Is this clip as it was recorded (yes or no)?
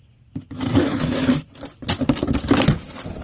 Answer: yes